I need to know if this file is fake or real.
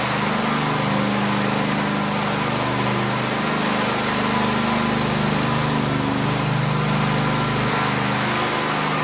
real